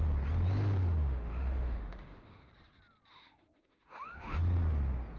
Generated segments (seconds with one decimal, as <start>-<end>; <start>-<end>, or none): 0.8-2.5; 3.1-4.4